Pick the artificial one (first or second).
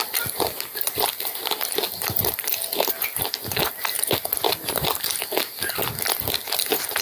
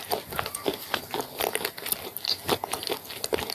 first